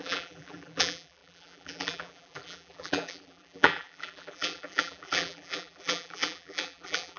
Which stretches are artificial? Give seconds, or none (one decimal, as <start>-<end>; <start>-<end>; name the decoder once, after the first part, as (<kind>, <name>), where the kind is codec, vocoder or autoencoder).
0.0-7.2 (vocoder, BigVGAN v2)